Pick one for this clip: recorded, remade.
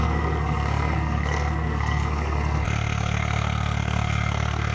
remade